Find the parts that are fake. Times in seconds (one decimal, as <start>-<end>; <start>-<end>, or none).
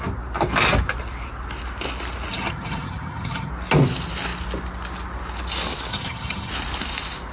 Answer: 2.3-3.5; 5.9-6.5